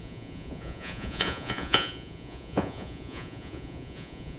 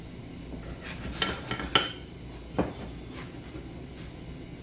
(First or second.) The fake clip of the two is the first